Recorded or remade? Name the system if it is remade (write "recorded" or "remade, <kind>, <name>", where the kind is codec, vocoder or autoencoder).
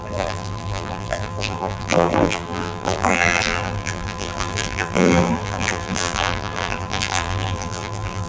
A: remade, vocoder, BigVGAN v2